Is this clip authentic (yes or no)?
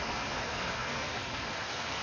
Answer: no